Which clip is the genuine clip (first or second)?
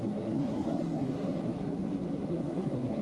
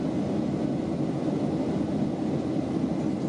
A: second